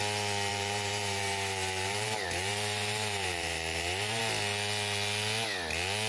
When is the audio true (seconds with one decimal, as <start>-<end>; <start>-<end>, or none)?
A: 0.0-0.5; 4.2-6.1